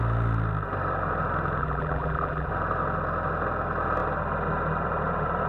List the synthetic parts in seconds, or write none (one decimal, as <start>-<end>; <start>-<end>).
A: 1.6-2.5